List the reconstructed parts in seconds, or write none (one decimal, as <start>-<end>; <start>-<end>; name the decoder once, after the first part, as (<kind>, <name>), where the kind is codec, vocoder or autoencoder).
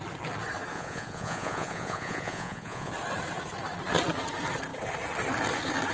0.7-2.9 (vocoder, Vocos)